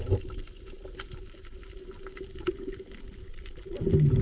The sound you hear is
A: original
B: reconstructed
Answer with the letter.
A